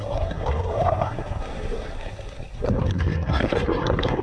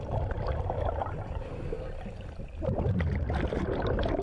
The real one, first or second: second